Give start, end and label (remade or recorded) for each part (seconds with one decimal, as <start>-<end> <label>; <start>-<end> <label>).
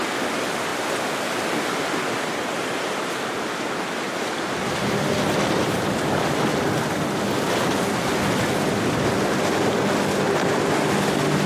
0.0-11.5 recorded